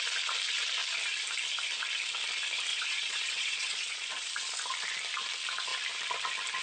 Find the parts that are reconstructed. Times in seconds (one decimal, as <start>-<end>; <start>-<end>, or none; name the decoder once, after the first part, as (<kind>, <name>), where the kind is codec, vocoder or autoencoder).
2.7-4.3 (vocoder, Vocos)

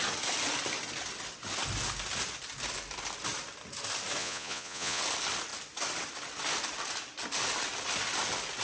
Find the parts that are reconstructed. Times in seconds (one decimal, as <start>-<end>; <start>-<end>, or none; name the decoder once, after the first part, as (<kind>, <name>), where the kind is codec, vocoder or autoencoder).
4.2-5.0 (vocoder, Vocos)

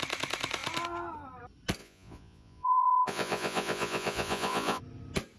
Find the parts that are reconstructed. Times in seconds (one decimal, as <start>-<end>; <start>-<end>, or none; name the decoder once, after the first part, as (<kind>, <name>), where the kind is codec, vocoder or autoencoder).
1.8-4.8 (vocoder, Vocos)

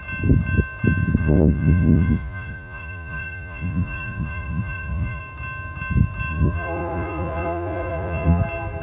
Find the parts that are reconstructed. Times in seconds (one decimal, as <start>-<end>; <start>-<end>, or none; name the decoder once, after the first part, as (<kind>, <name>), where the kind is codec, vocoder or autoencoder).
1.2-5.2 (vocoder, Vocos); 6.3-8.4

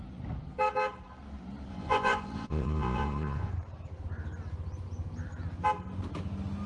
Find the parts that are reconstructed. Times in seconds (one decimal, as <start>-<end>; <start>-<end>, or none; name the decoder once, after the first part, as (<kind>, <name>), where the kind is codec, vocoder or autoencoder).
1.7-3.5 (vocoder, Vocos)

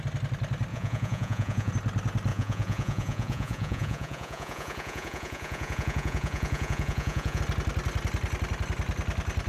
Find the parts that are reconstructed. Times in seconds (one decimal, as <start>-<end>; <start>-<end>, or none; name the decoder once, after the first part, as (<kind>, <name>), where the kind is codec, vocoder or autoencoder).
0.7-1.7 (vocoder, Vocos); 2.3-7.4

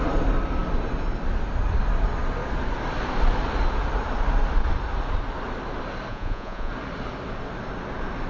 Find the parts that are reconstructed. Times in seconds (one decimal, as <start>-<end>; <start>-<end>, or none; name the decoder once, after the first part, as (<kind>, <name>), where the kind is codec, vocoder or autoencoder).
6.1-6.7 (vocoder, Vocos)